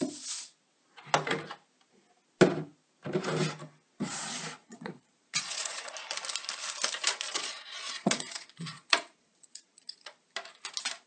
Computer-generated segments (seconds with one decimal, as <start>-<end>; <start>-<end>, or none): 4.6-5.9; 7.3-10.2